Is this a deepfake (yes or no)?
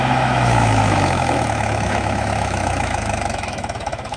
yes